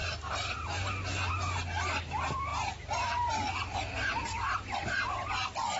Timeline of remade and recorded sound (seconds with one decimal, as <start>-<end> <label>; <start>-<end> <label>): 0.0-5.8 recorded